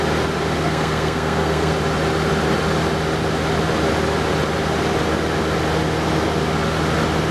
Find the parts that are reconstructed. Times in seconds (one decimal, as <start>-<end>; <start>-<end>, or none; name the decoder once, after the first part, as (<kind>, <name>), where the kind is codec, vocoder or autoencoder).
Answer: 0.6-1.7 (codec, SNAC)